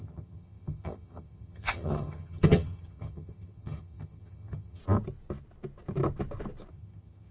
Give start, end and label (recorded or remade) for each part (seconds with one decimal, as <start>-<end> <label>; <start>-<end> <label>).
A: 0.0-4.8 remade; 4.8-6.7 recorded; 6.7-7.3 remade